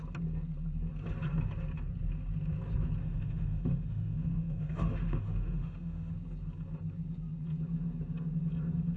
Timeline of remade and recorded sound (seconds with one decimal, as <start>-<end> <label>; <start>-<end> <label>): 0.0-3.0 recorded; 3.0-6.1 remade; 6.1-9.0 recorded